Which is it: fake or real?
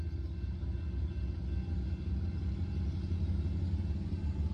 real